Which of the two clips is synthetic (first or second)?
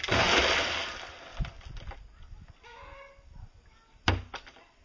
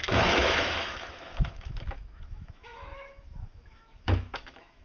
second